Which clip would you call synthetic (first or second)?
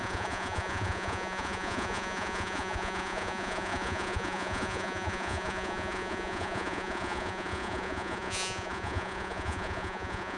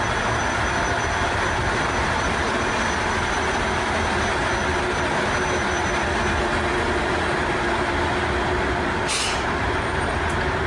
first